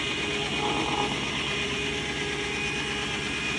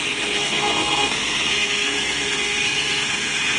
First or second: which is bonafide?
first